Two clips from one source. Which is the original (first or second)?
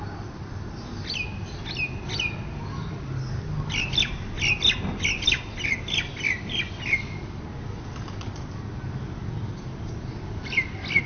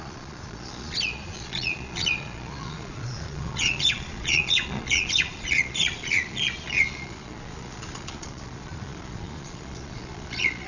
first